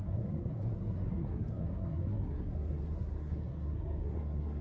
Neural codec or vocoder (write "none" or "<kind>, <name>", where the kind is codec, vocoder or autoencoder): codec, SNAC